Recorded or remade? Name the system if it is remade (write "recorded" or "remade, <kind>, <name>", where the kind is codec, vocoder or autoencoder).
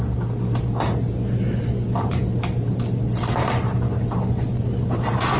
recorded